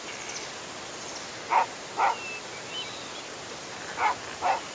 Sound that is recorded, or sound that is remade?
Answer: recorded